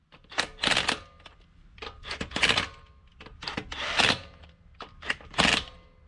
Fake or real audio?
real